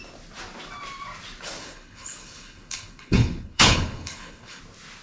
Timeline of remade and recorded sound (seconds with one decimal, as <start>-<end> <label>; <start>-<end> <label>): 0.0-1.6 recorded; 1.6-4.6 remade; 4.6-5.0 recorded